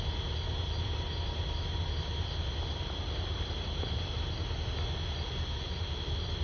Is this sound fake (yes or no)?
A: no